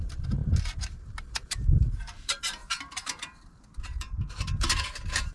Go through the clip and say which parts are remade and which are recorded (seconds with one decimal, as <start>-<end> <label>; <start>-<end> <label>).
0.0-0.4 remade; 0.4-1.3 recorded; 1.3-5.3 remade